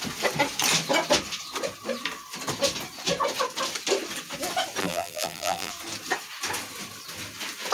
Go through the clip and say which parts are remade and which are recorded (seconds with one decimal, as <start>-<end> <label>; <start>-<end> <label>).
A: 0.0-4.8 recorded; 4.8-5.7 remade; 5.7-7.7 recorded

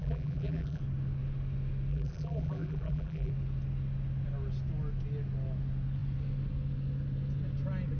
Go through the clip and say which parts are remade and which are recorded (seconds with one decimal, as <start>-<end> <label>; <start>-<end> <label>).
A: 0.0-0.8 remade; 0.8-1.9 recorded; 1.9-3.3 remade; 3.3-8.0 recorded

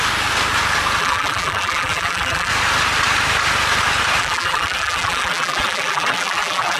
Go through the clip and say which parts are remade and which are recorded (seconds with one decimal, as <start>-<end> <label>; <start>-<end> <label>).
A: 0.0-1.0 recorded; 1.0-2.5 remade; 2.5-4.2 recorded; 4.2-6.8 remade